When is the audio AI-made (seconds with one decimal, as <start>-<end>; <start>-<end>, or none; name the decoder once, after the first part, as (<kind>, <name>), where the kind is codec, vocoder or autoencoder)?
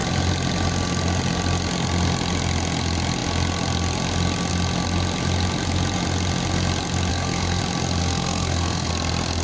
7.1-7.6 (codec, SNAC); 8.0-8.9